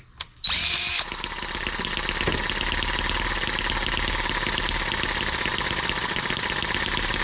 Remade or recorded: recorded